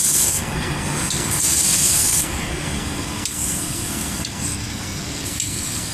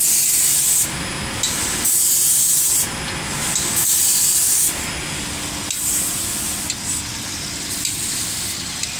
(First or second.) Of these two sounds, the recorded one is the second